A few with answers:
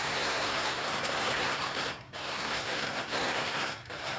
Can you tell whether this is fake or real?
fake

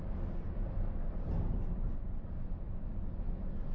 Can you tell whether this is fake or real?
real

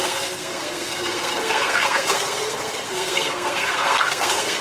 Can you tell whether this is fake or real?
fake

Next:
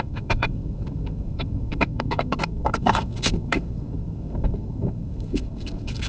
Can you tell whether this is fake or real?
fake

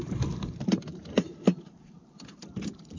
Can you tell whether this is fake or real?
real